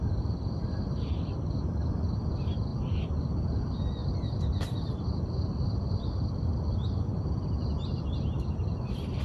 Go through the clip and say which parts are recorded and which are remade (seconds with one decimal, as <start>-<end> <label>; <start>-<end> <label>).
0.0-9.2 recorded